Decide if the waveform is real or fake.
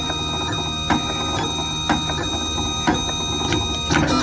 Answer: real